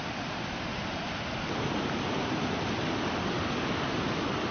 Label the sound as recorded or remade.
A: recorded